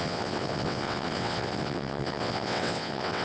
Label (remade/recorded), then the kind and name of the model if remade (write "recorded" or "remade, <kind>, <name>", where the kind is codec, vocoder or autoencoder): remade, vocoder, WaveNeXt